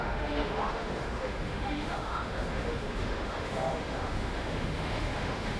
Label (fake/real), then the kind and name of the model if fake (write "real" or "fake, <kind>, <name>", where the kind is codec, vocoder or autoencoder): fake, autoencoder, DAC-VAE